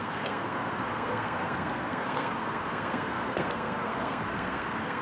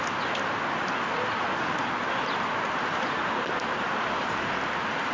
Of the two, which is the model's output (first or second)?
first